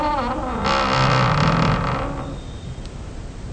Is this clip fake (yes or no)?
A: no